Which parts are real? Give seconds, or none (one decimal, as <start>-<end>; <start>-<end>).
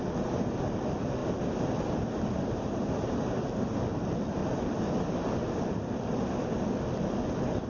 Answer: 0.0-7.7